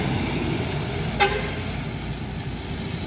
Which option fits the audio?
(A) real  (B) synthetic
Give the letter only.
A